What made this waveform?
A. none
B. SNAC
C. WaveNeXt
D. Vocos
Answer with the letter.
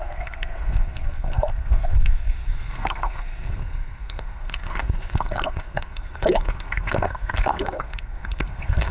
B